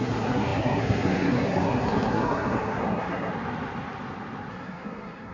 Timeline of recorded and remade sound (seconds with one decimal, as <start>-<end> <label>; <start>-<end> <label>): 0.0-3.3 remade; 3.3-4.5 recorded; 4.5-5.3 remade